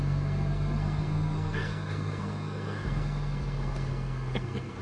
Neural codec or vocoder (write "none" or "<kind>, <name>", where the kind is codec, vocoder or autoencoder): codec, SNAC